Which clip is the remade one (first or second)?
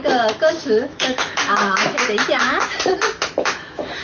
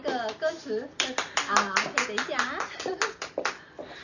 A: first